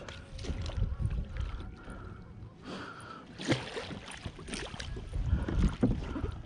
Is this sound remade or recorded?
recorded